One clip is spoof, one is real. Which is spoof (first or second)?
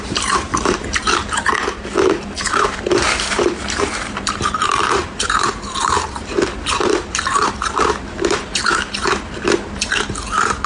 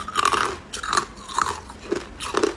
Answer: first